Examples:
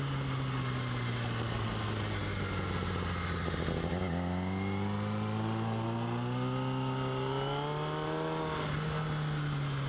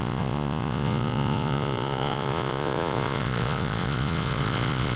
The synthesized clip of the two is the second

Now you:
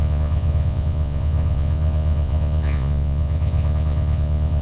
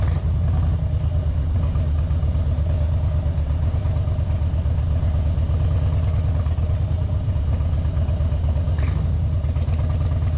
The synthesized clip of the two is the first